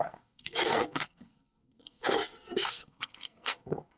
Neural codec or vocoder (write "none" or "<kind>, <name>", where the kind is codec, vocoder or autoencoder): codec, SNAC